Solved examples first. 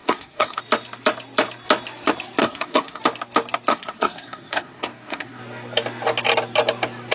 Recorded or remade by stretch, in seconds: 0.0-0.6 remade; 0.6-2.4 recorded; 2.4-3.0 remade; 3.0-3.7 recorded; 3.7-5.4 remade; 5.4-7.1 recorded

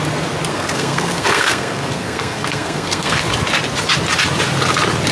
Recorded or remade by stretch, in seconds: 0.0-0.5 recorded; 0.5-3.2 remade; 3.2-5.1 recorded

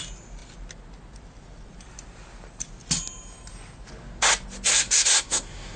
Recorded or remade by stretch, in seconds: 0.0-4.7 recorded; 4.7-5.8 remade

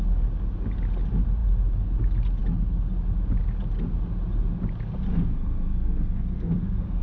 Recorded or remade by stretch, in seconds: 0.0-5.1 recorded; 5.1-7.0 remade

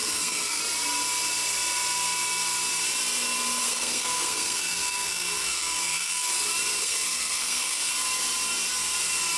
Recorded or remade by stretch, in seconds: 0.0-0.6 remade; 0.6-3.6 recorded; 3.6-6.3 remade; 6.3-6.8 recorded; 6.8-7.9 remade; 7.9-9.4 recorded

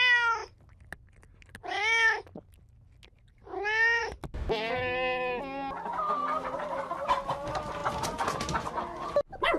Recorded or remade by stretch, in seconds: 0.0-9.6 recorded